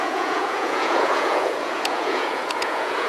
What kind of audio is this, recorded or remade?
remade